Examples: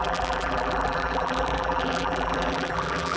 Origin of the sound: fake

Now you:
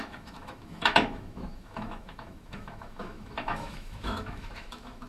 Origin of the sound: fake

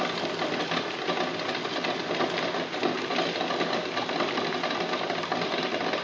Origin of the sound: real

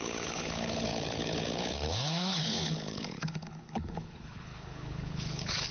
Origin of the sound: fake